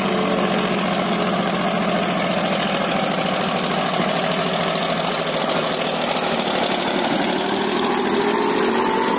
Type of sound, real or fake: real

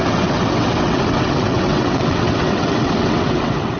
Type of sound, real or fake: fake